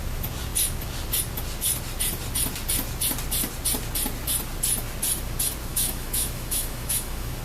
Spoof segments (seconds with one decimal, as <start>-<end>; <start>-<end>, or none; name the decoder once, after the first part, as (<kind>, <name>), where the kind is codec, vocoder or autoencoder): 5.7-7.4 (autoencoder, DAC-VAE)